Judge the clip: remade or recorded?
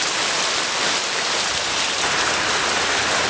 recorded